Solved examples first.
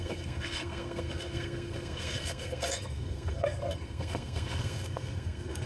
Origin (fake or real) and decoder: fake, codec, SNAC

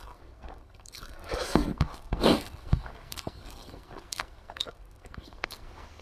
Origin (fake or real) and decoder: fake, codec, SNAC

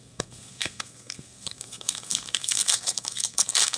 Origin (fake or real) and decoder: fake, codec, SNAC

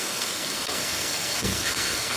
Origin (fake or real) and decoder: fake, codec, SNAC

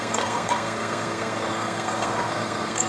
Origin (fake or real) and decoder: fake, codec, SNAC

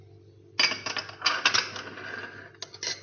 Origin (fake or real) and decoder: real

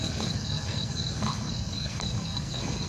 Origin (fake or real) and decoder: fake, codec, SNAC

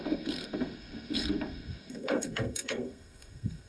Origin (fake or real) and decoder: fake, codec, SNAC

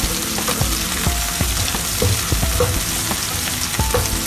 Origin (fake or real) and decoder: real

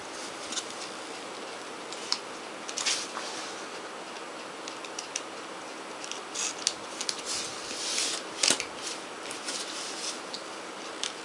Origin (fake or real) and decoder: real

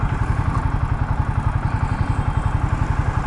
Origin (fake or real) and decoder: real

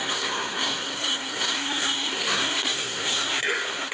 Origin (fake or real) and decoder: fake, codec, SNAC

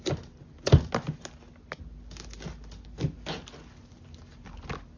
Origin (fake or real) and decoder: real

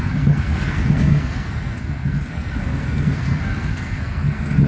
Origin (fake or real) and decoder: fake, codec, SNAC